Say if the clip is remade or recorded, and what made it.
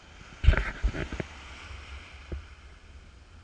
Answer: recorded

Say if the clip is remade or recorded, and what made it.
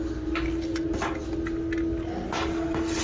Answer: recorded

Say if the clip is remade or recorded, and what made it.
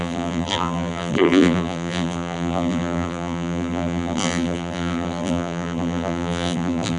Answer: remade, vocoder, BigVGAN v2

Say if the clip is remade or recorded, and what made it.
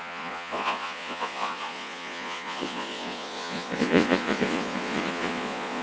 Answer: remade, vocoder, Vocos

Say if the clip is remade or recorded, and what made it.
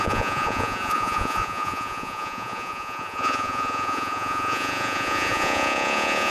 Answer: remade, vocoder, Vocos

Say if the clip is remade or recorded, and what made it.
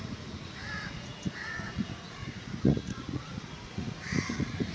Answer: remade, vocoder, Vocos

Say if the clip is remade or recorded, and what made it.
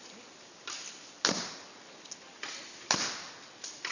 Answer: recorded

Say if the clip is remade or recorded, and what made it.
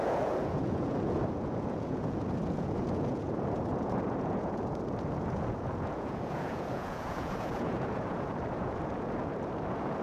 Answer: remade, vocoder, Vocos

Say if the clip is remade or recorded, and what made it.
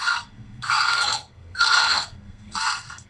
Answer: remade, codec, SNAC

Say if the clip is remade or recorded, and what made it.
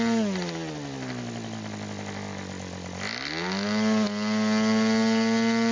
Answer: recorded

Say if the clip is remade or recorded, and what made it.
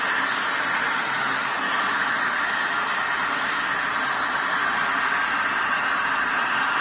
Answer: recorded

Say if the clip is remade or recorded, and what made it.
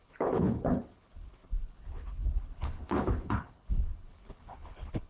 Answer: remade, codec, HILCodec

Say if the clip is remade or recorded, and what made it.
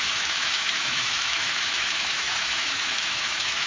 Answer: remade, autoencoder, DAC-VAE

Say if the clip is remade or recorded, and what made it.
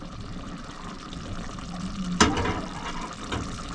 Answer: recorded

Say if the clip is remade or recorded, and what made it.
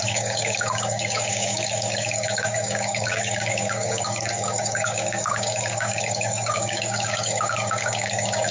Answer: remade, codec, DAC